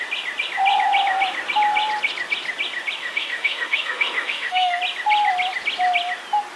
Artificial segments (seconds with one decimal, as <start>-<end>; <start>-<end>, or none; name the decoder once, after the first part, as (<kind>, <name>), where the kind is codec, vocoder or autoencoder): 3.0-4.8 (autoencoder, DAC-VAE)